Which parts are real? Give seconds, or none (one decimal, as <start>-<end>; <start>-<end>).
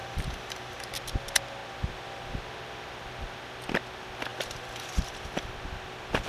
0.9-4.3; 5.5-6.3